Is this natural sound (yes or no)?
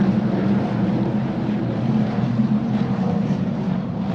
no